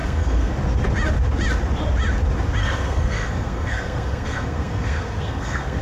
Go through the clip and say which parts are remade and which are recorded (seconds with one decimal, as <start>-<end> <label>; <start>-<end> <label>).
0.0-0.5 remade; 0.5-2.6 recorded; 2.6-5.8 remade